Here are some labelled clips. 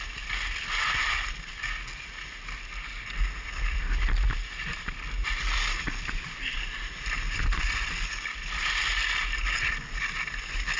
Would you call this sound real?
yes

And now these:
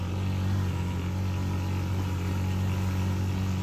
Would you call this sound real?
yes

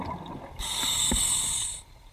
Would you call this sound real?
yes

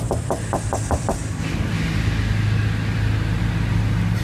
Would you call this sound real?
yes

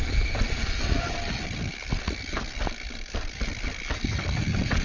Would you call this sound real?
no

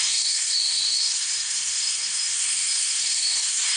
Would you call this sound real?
no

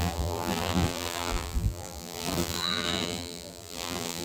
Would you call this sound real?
no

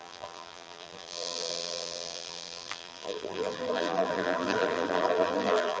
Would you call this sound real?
no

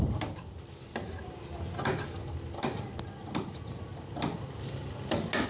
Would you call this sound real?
yes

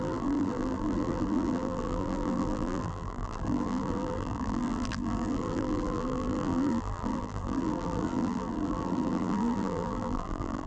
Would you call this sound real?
no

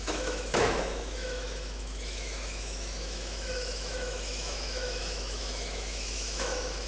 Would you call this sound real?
no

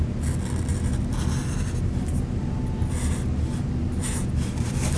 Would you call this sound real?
yes